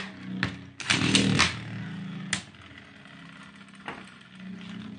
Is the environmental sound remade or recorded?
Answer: recorded